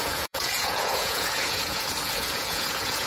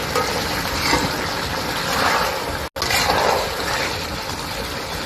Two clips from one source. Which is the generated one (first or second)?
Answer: first